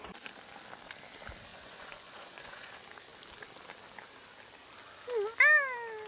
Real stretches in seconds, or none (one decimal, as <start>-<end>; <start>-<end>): 0.0-1.5; 2.7-6.1